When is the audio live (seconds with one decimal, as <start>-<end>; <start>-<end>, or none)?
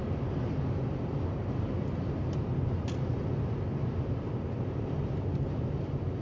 0.0-6.2